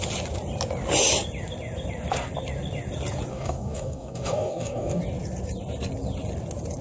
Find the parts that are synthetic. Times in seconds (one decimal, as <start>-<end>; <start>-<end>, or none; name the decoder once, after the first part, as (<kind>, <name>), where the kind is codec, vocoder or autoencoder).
3.3-5.0 (codec, DAC)